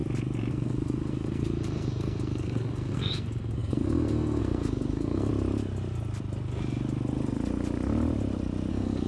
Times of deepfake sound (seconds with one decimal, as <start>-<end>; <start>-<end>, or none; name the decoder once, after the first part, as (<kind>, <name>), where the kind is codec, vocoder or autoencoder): 0.5-5.3 (codec, SNAC); 8.7-9.1